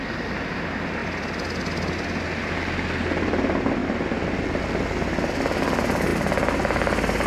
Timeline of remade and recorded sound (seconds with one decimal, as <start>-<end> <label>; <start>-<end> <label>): 0.0-7.3 recorded